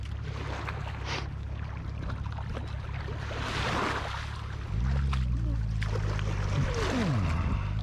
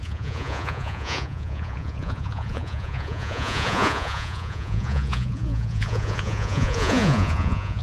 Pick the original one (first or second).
first